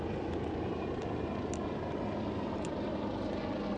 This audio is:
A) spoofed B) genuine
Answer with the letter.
B